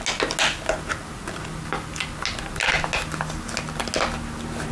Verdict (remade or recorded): recorded